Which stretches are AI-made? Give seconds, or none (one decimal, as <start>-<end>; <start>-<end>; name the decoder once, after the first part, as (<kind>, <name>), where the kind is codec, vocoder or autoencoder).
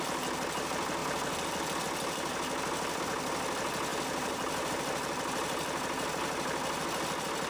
3.9-4.7 (vocoder, BigVGAN v2)